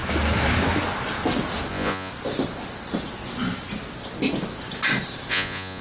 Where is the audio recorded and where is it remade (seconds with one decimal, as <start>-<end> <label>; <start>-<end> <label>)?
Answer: 0.0-1.7 recorded; 1.7-2.1 remade; 2.1-5.3 recorded; 5.3-5.8 remade